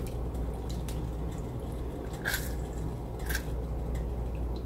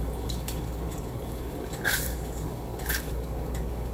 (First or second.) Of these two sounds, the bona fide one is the first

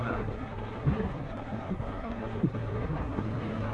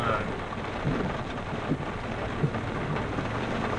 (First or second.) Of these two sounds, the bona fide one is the second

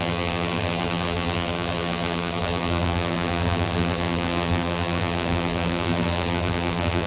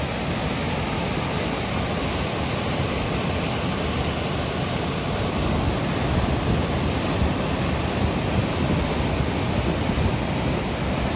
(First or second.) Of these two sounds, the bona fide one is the second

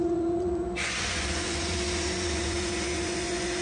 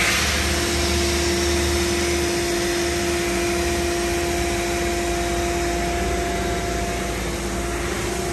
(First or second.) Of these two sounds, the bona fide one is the second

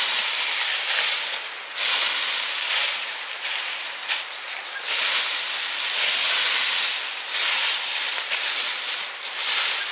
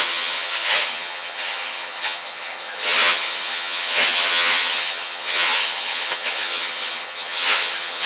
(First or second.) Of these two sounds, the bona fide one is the first